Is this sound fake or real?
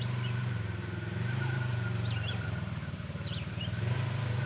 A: fake